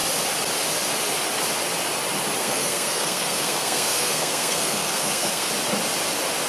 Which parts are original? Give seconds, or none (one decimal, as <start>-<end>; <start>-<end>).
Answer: 0.0-2.4; 5.5-6.5